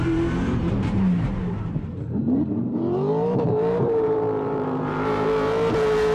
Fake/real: fake